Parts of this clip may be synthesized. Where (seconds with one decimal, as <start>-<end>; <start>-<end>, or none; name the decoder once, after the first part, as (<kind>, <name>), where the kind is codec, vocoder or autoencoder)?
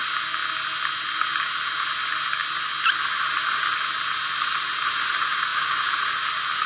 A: none